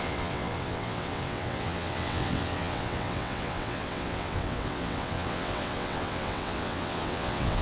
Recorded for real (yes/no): no